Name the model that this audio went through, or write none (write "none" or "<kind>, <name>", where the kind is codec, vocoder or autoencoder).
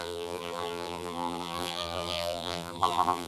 vocoder, BigVGAN v2